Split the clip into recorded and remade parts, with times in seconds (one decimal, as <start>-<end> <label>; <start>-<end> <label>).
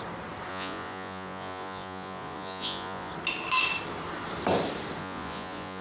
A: 0.0-0.5 recorded; 0.5-3.1 remade; 3.1-5.0 recorded; 5.0-5.8 remade